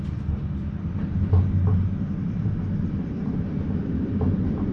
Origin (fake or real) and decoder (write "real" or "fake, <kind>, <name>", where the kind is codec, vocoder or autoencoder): real